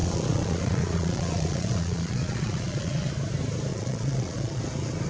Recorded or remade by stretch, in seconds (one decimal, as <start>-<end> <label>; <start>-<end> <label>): 0.0-3.1 remade; 3.1-3.7 recorded; 3.7-4.6 remade; 4.6-5.1 recorded